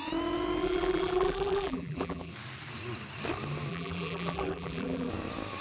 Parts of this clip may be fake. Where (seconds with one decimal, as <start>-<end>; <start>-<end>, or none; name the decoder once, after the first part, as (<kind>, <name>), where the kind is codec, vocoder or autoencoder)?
0.6-2.3 (vocoder, BigVGAN v2); 3.7-5.1